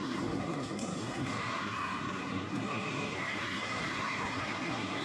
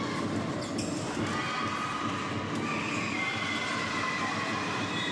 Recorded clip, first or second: second